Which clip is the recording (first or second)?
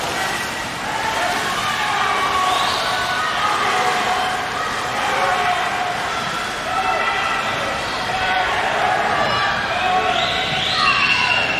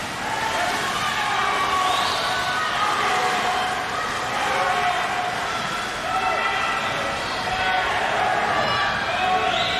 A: second